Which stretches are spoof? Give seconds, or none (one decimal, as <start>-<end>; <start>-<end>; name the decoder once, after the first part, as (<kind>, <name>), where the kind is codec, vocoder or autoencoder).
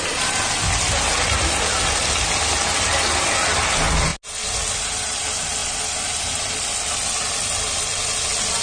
none